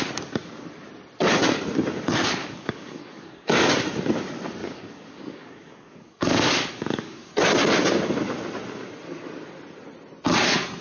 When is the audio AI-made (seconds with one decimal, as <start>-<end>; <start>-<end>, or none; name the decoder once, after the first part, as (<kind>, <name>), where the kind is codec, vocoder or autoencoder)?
2.4-3.7 (codec, DAC); 4.6-7.3